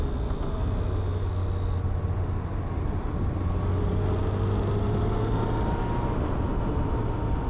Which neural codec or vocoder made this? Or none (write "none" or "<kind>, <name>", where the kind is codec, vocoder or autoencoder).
none